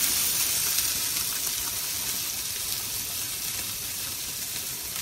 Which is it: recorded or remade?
recorded